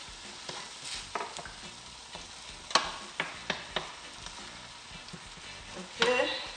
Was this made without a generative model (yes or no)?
yes